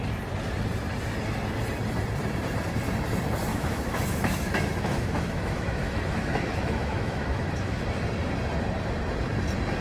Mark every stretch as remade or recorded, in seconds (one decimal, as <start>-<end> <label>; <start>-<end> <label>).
0.0-3.5 recorded; 3.5-7.8 remade; 7.8-9.8 recorded